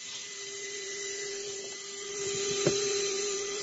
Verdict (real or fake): fake